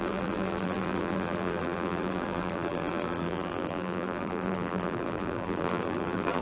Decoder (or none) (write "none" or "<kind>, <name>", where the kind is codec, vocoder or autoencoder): vocoder, BigVGAN v2